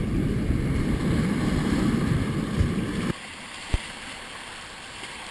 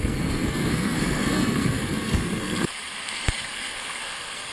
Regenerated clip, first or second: second